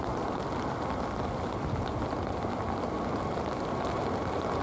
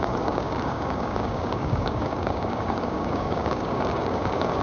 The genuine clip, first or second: first